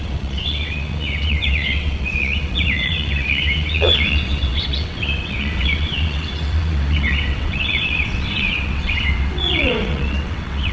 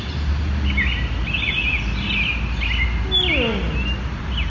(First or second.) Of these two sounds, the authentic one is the second